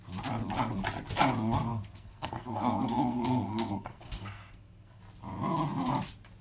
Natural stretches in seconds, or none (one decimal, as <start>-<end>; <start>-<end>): 0.0-1.7; 5.0-6.4